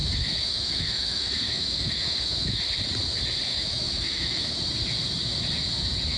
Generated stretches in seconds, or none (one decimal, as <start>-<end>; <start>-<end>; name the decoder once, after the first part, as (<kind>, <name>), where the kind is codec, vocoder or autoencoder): 0.0-2.6 (autoencoder, DAC-VAE); 3.5-4.6